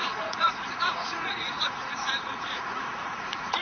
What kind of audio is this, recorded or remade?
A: remade